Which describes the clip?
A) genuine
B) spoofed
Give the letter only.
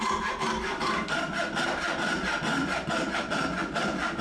A